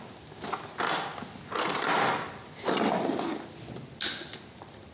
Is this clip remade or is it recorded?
recorded